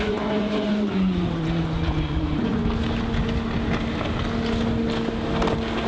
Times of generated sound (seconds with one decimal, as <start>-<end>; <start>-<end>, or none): 0.0-2.6